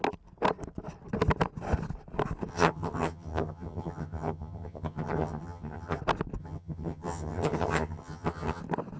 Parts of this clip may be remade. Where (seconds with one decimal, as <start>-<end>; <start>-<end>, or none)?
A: 2.5-6.0; 6.4-8.6